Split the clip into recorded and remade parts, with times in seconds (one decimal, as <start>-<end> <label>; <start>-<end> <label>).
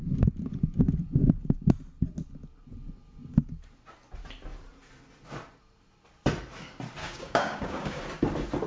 0.0-7.0 recorded; 7.0-8.0 remade; 8.0-8.7 recorded